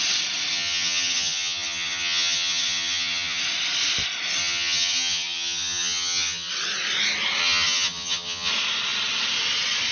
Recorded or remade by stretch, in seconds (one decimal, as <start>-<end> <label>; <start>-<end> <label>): 0.0-0.5 recorded; 0.5-3.4 remade; 3.4-4.4 recorded; 4.4-6.5 remade; 6.5-7.4 recorded; 7.4-8.5 remade; 8.5-9.9 recorded